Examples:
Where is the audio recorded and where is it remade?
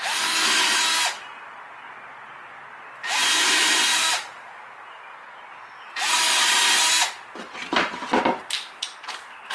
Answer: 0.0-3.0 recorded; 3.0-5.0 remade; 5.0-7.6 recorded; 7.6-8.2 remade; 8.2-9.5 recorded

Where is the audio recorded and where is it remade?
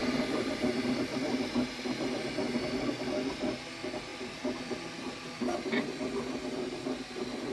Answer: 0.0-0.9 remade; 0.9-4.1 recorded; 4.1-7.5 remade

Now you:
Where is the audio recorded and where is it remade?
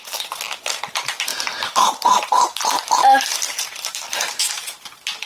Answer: 0.0-1.3 recorded; 1.3-4.5 remade; 4.5-5.3 recorded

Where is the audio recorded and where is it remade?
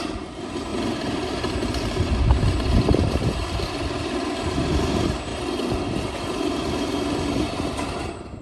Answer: 0.0-5.3 remade; 5.3-7.5 recorded; 7.5-8.4 remade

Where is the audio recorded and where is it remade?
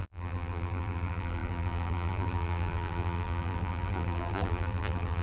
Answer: 0.0-5.2 remade